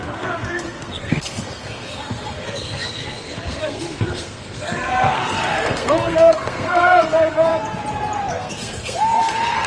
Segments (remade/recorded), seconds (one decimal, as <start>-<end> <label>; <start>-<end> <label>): 0.0-7.5 remade; 7.5-8.3 recorded; 8.3-9.7 remade